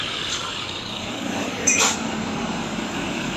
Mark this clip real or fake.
fake